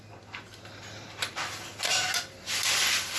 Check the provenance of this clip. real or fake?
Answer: real